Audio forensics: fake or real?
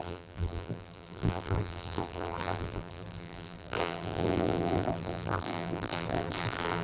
fake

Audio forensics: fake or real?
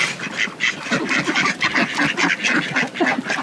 real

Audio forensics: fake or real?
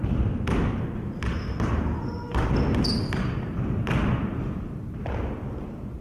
real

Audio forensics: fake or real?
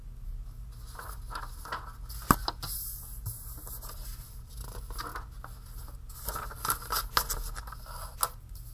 real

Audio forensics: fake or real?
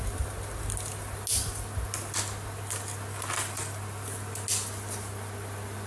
real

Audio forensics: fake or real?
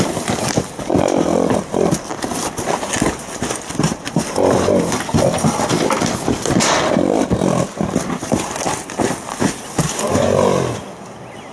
real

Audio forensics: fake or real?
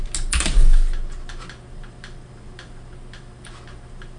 real